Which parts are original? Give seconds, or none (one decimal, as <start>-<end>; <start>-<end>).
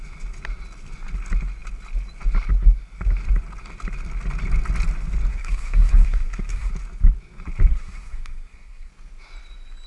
0.0-5.3; 6.7-7.7; 8.9-9.9